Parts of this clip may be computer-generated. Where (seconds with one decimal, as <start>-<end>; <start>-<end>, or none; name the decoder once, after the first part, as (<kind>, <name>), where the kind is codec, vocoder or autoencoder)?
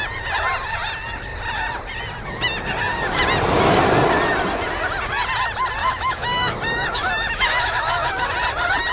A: 5.8-8.3 (autoencoder, DAC-VAE)